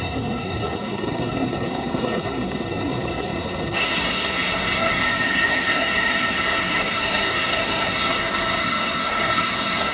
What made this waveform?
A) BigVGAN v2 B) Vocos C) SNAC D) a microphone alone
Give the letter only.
C